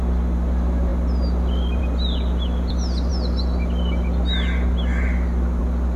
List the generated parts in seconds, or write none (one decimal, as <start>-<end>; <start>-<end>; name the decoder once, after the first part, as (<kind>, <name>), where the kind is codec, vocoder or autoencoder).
none